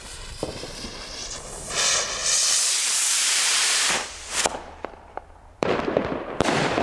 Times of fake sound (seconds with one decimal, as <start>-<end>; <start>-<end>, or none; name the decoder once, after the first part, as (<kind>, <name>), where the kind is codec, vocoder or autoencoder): 0.0-2.2 (vocoder, BigVGAN v2); 3.1-6.8